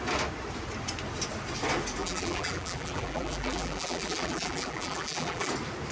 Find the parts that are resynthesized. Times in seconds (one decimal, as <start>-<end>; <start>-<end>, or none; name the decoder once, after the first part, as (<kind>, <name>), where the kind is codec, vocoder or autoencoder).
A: 2.0-5.5 (vocoder, BigVGAN v2)